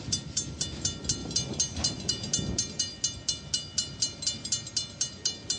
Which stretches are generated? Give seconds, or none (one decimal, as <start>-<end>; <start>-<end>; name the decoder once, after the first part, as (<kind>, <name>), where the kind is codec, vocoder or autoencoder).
none